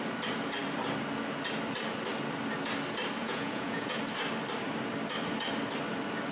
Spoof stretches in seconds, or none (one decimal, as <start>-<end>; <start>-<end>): 3.2-4.0

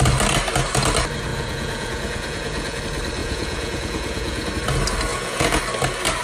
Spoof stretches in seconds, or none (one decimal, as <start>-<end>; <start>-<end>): 1.3-2.8; 3.2-4.5; 5.1-5.6

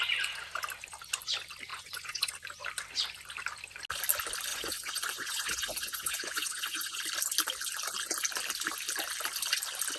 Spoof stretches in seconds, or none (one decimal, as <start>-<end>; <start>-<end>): 1.7-2.3; 4.5-7.0

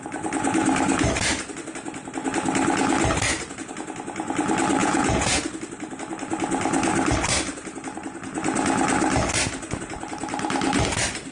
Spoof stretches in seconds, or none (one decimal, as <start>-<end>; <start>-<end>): 4.8-5.4

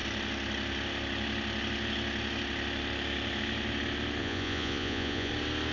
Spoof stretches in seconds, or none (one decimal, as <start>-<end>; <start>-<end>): 4.2-5.3